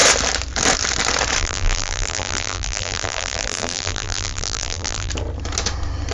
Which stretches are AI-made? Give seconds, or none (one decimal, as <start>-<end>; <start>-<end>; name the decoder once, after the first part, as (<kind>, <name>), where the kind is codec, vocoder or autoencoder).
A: 1.4-5.1 (vocoder, BigVGAN v2)

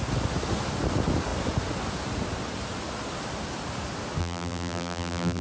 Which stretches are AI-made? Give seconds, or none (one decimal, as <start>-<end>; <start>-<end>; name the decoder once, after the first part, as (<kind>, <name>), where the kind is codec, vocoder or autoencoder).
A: 4.2-5.4 (vocoder, BigVGAN v2)

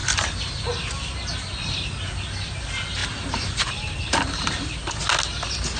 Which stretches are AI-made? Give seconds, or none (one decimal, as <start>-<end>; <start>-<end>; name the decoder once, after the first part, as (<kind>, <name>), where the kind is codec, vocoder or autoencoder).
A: 3.0-4.6 (vocoder, BigVGAN v2)

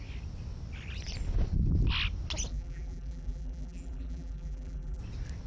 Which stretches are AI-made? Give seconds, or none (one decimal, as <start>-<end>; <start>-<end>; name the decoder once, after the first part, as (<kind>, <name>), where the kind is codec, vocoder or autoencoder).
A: 2.5-5.0 (vocoder, BigVGAN v2)

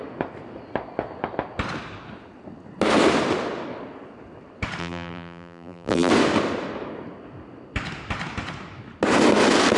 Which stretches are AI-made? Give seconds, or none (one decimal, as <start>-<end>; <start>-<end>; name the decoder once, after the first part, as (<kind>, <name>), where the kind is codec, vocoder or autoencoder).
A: 4.8-6.1 (vocoder, BigVGAN v2)